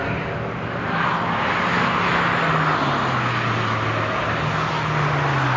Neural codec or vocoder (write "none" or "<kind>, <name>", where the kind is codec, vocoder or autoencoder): none